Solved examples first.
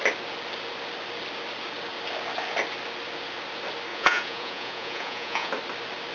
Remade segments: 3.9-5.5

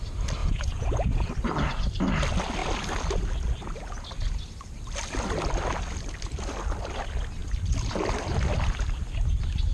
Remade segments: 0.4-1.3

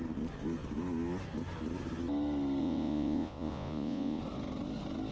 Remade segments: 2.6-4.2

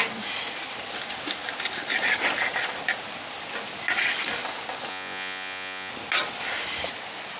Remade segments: 4.9-5.9